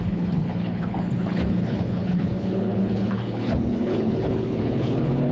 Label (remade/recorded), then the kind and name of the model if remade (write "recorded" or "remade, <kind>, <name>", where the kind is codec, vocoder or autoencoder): remade, codec, HILCodec